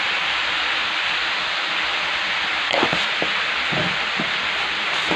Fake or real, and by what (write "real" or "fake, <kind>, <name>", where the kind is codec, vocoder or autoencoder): real